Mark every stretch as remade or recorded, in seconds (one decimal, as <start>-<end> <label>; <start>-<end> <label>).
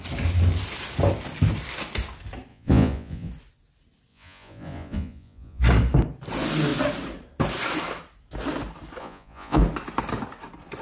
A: 0.0-2.5 recorded; 2.5-3.3 remade; 3.3-4.1 recorded; 4.1-5.6 remade; 5.6-9.0 recorded; 9.0-9.6 remade; 9.6-10.8 recorded